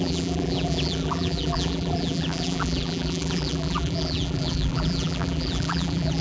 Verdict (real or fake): fake